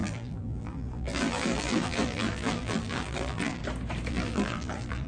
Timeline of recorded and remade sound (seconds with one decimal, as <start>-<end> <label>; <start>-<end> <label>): 0.0-3.6 remade; 3.6-4.1 recorded; 4.1-5.1 remade